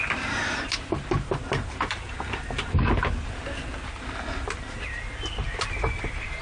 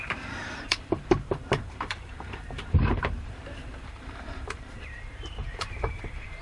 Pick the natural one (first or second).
first